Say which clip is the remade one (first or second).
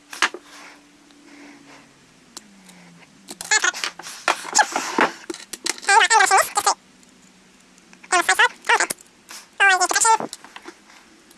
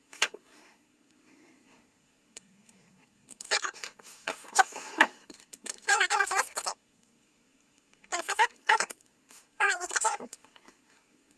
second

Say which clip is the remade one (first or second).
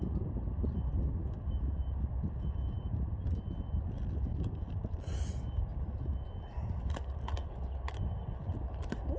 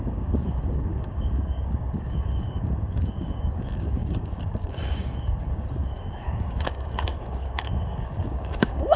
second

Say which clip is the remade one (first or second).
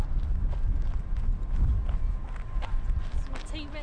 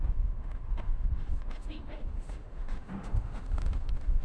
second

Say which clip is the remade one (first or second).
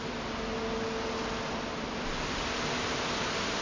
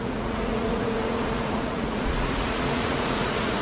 second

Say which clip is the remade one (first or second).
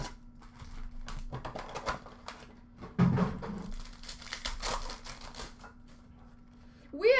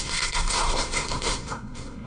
second